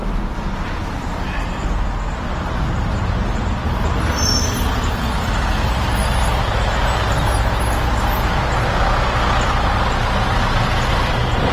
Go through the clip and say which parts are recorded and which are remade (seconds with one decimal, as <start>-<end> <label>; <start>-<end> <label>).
0.0-11.5 recorded